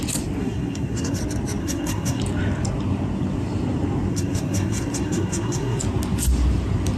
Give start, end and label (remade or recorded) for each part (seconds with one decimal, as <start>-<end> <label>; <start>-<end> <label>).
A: 0.0-0.4 recorded; 0.4-1.2 remade; 1.2-1.6 recorded; 1.6-2.2 remade; 2.2-4.1 recorded; 4.1-5.8 remade; 5.8-7.0 recorded